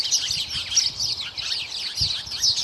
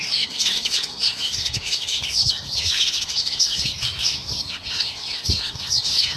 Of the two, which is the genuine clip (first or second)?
first